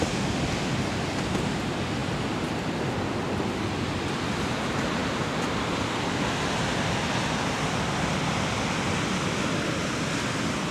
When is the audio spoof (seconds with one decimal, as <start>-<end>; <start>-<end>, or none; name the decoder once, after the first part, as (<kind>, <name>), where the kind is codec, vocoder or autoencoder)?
5.0-6.3 (vocoder, BigVGAN v2)